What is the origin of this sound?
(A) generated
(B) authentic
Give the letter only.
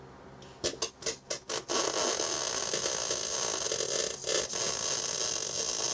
B